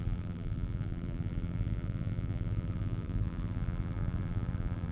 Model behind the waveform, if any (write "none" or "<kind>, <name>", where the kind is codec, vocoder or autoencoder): vocoder, BigVGAN v2